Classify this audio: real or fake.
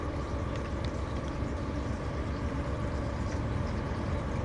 real